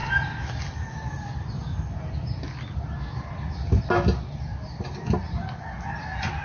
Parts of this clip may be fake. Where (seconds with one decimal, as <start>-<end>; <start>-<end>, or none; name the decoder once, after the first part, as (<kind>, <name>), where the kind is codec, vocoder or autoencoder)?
none